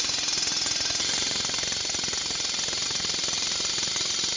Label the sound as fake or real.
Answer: real